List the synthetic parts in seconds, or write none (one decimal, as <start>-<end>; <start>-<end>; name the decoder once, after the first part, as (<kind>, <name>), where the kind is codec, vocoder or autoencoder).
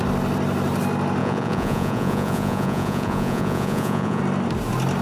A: 1.2-4.2 (vocoder, Vocos)